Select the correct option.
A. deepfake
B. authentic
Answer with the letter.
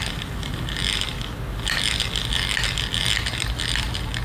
B